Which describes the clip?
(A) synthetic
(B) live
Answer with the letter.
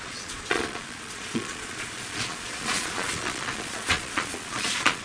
A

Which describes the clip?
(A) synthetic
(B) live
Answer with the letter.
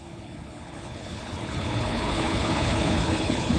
A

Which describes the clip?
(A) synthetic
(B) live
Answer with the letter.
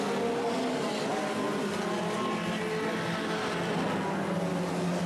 B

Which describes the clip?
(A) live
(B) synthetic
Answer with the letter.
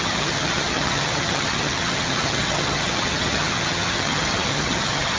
B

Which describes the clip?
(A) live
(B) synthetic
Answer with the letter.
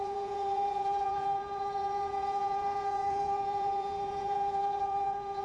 B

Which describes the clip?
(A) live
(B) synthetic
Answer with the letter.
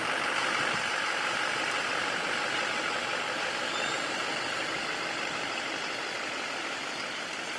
A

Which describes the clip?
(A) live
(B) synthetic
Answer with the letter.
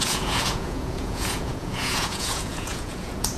B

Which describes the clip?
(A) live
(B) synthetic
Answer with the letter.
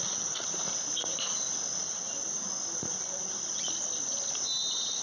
A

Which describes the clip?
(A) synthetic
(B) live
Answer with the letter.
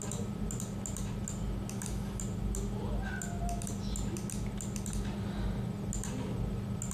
B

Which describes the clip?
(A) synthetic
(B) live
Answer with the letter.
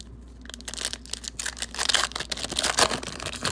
B